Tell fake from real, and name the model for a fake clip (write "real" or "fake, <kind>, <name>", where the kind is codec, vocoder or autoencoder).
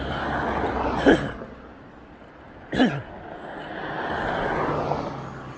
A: real